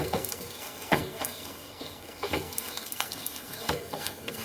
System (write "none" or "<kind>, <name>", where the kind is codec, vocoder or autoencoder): codec, SNAC